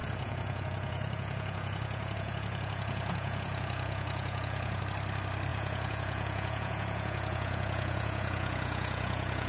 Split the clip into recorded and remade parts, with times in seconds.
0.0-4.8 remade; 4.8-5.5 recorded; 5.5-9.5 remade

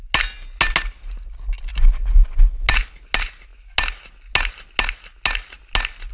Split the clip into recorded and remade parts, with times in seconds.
0.0-6.1 recorded

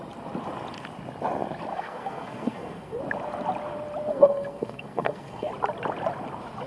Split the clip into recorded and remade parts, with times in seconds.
0.0-1.7 recorded; 1.7-3.0 remade; 3.0-4.1 recorded; 4.1-5.5 remade; 5.5-6.7 recorded

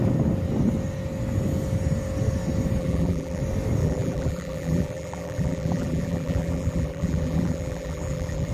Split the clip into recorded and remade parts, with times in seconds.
0.0-2.8 recorded; 2.8-3.4 remade; 3.4-3.8 recorded; 3.8-8.5 remade

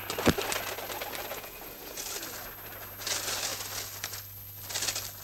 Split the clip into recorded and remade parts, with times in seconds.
0.0-1.3 recorded; 1.3-2.0 remade; 2.0-5.2 recorded

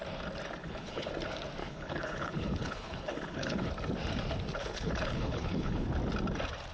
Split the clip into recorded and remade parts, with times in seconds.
0.0-0.6 recorded; 0.6-1.1 remade; 1.1-1.6 recorded; 1.6-3.7 remade; 3.7-4.6 recorded; 4.6-5.9 remade; 5.9-6.7 recorded

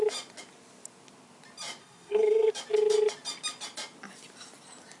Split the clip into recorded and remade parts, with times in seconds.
0.0-1.8 recorded; 1.8-2.5 remade; 2.5-5.0 recorded